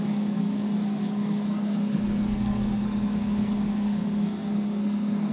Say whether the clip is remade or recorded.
remade